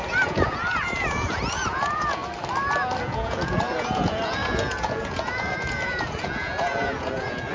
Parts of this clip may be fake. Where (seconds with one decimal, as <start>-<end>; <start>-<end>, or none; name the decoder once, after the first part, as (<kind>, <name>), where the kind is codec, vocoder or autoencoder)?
0.0-2.2 (vocoder, Vocos); 3.0-7.5